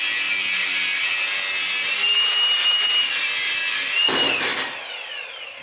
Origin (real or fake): real